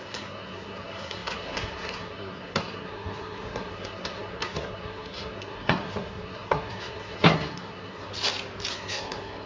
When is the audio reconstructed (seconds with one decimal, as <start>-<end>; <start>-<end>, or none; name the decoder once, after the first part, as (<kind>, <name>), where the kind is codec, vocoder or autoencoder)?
0.0-8.1 (codec, SNAC); 8.7-9.5